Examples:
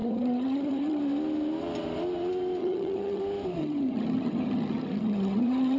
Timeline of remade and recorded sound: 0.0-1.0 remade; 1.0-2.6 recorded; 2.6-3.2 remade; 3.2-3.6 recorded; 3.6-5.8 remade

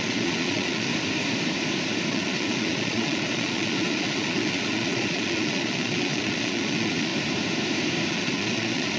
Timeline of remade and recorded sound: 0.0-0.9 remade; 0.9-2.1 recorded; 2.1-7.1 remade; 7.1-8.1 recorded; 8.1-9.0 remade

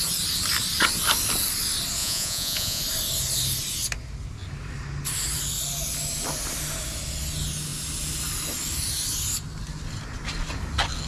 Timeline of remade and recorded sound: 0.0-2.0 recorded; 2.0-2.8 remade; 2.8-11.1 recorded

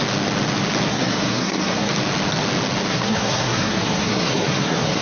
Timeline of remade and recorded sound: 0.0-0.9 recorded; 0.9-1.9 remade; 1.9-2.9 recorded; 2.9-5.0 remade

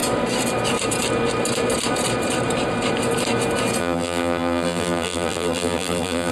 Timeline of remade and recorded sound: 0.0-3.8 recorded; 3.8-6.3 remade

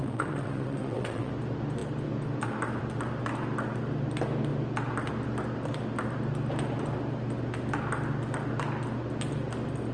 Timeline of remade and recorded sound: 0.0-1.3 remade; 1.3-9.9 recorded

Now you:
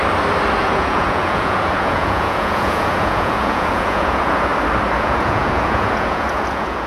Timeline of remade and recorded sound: 0.0-0.6 recorded; 0.6-4.5 remade; 4.5-5.0 recorded; 5.0-6.9 remade